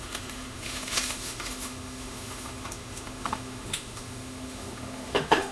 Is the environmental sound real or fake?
fake